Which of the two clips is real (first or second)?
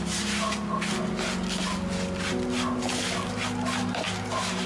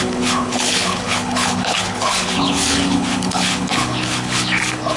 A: first